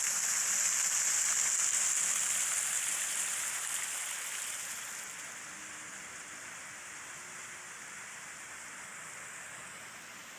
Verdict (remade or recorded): recorded